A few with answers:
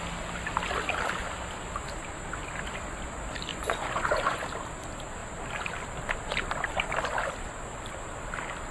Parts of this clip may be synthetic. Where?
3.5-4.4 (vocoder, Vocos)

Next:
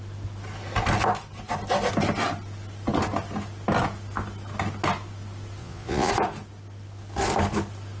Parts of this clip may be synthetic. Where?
5.6-6.1 (vocoder, Vocos)

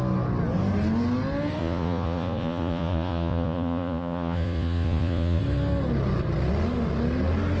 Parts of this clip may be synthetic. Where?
1.6-5.4 (vocoder, Vocos)